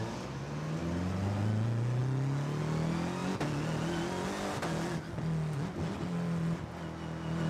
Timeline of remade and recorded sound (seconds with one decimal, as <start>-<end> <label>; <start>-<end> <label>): 0.0-7.5 recorded